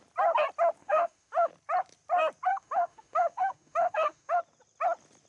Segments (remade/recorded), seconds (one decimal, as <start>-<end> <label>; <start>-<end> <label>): 0.0-0.8 recorded; 0.8-1.5 remade; 1.5-2.5 recorded; 2.5-4.4 remade; 4.4-5.3 recorded